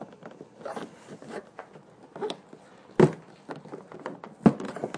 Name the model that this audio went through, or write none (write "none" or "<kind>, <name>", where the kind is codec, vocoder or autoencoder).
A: none